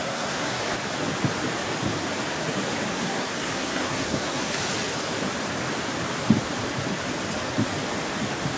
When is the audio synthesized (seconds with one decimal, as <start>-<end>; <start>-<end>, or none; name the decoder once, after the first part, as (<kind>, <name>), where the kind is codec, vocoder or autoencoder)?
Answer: 0.0-0.6 (codec, SNAC); 2.9-4.5